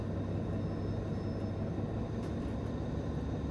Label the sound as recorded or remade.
recorded